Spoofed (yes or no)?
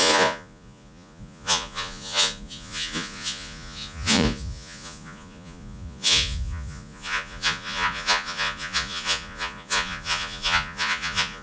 yes